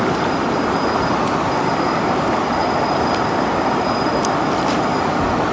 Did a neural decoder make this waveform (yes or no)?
no